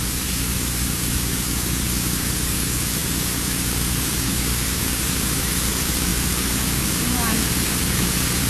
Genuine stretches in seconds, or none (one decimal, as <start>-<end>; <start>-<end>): none